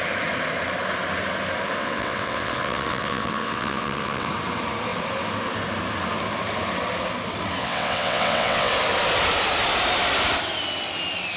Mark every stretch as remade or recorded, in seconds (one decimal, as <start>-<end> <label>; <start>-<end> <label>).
0.0-1.8 recorded; 1.8-4.3 remade; 4.3-7.6 recorded; 7.6-8.7 remade; 8.7-11.4 recorded